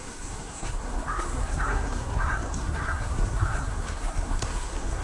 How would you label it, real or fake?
fake